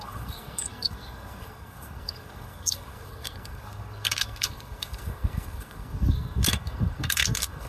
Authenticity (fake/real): fake